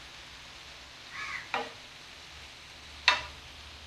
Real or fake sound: real